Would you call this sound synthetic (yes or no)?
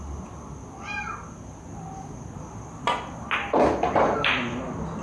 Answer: no